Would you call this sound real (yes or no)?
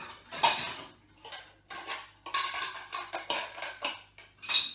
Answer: yes